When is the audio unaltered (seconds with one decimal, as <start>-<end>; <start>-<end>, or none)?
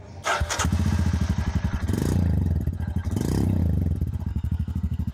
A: 0.0-4.3